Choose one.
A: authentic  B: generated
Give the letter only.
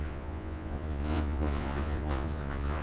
B